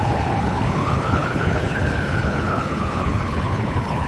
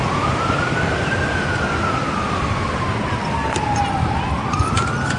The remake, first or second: first